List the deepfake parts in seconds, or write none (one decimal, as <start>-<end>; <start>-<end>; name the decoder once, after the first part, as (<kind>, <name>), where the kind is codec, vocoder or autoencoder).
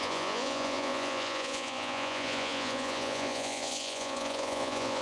0.0-5.0 (vocoder, Vocos)